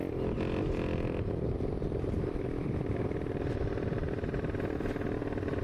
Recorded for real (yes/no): no